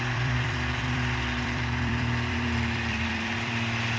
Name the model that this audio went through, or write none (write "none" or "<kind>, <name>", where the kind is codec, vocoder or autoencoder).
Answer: vocoder, BigVGAN v2